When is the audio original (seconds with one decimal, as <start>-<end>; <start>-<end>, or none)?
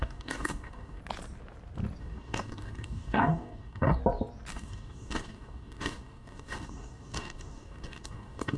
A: 1.0-2.0; 4.0-4.5